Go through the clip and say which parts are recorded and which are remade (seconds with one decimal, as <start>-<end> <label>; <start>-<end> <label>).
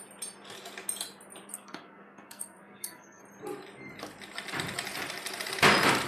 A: 0.0-1.5 recorded; 1.5-3.2 remade; 3.2-6.1 recorded